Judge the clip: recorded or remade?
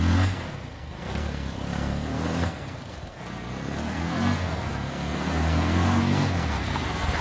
remade